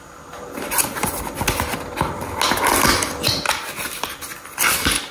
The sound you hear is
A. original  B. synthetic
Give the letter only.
A